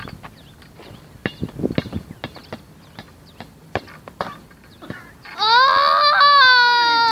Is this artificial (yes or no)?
no